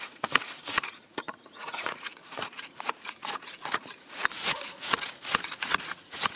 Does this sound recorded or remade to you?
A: remade